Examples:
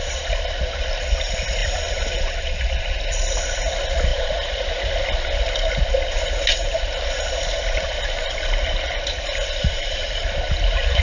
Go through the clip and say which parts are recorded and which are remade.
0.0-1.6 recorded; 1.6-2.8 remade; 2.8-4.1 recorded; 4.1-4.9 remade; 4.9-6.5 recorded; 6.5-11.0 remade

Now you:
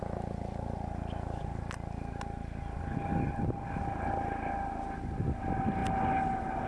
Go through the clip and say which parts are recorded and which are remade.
0.0-6.7 recorded

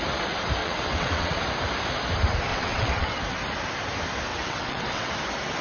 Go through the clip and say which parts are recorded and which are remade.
0.0-0.6 recorded; 0.6-1.4 remade; 1.4-2.5 recorded; 2.5-3.2 remade; 3.2-4.3 recorded; 4.3-5.1 remade; 5.1-5.6 recorded

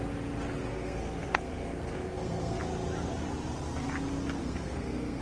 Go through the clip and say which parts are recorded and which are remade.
0.0-0.7 recorded; 0.7-2.6 remade; 2.6-4.4 recorded; 4.4-5.2 remade

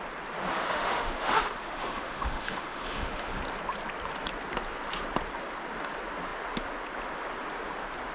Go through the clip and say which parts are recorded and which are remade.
0.0-0.6 recorded; 0.6-3.4 remade; 3.4-8.1 recorded